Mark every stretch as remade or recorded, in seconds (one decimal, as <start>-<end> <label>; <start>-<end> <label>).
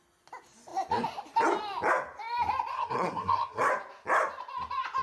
0.0-2.7 recorded; 2.7-3.7 remade; 3.7-5.0 recorded